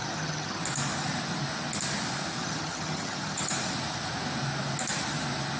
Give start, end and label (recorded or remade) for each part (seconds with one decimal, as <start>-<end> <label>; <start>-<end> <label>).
0.0-0.6 remade; 0.6-2.4 recorded; 2.4-3.5 remade; 3.5-5.6 recorded